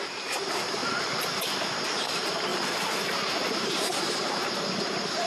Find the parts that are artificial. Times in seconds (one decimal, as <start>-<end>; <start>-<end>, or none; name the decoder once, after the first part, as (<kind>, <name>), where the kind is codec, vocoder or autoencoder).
0.0-0.8 (vocoder, BigVGAN v2); 2.0-5.3